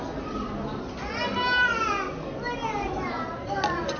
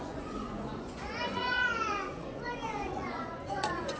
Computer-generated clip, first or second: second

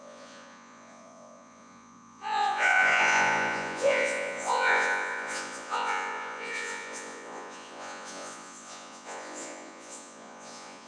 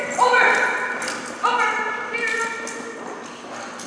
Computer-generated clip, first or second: first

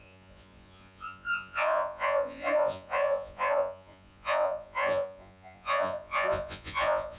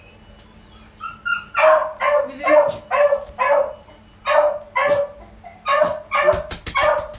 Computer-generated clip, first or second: first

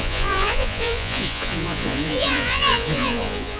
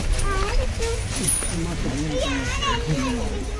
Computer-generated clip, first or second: first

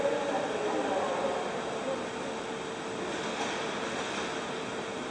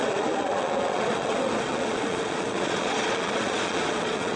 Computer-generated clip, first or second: second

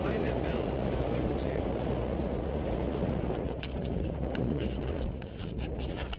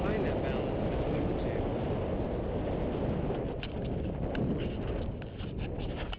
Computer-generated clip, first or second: first